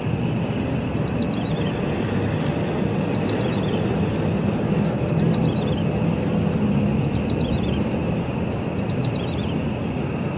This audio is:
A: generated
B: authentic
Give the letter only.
B